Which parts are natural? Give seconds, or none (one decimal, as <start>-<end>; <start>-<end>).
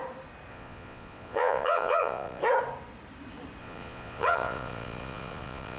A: 0.0-0.5; 2.4-3.6